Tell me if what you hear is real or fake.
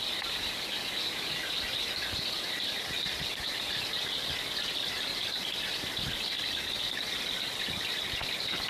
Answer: real